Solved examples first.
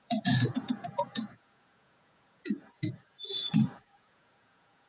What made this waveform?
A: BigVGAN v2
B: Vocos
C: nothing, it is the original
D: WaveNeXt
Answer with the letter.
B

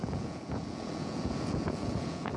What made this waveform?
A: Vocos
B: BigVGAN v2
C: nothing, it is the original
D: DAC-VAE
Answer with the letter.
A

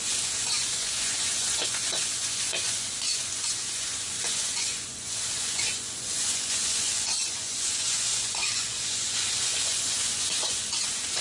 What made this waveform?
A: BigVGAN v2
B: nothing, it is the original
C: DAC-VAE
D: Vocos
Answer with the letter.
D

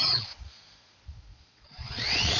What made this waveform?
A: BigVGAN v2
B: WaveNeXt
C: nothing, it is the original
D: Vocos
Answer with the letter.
D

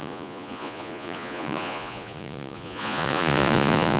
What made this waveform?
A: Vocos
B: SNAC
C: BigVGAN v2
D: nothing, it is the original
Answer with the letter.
A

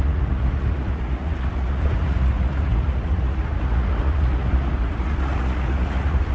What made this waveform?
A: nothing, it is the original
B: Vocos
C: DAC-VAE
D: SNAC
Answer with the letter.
B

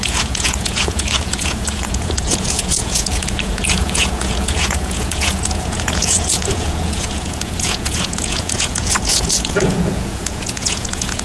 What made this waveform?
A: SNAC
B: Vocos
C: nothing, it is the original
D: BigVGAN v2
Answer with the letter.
B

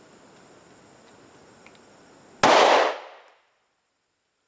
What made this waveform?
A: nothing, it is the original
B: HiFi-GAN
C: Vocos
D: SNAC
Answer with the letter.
A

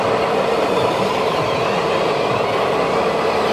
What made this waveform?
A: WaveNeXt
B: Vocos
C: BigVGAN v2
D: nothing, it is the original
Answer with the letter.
D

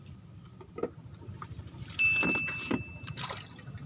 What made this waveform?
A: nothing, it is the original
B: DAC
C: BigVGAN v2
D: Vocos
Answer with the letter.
A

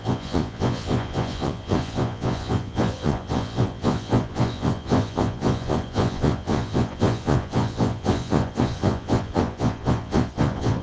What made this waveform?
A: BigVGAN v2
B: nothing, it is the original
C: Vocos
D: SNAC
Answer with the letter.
C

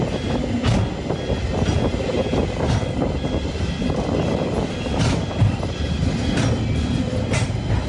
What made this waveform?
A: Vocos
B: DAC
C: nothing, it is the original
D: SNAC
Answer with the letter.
C